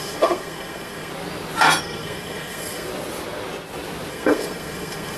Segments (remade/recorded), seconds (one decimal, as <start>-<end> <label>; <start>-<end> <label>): 0.0-1.1 remade; 1.1-1.8 recorded; 1.8-2.9 remade; 2.9-4.1 recorded; 4.1-5.2 remade